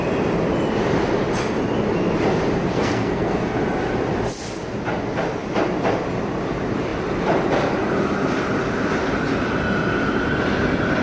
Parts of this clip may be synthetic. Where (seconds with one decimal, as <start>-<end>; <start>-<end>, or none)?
2.7-3.6